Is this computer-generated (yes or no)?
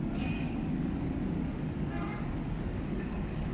yes